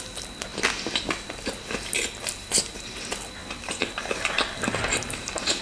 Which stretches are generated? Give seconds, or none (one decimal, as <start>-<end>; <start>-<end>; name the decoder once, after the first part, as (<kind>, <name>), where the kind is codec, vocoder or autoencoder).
3.4-3.9 (vocoder, BigVGAN v2); 4.9-5.6